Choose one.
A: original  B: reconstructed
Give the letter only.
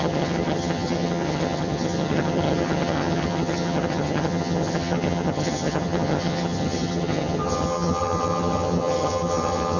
B